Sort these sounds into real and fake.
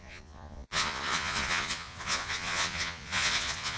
fake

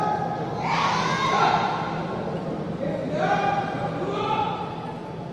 real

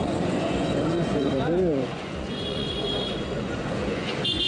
fake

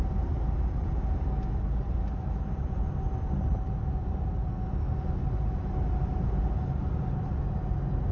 real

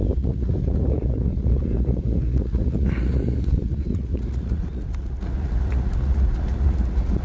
fake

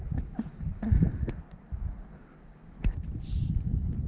real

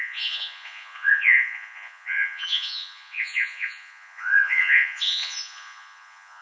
fake